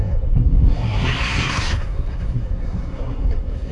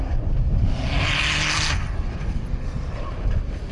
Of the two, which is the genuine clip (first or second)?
second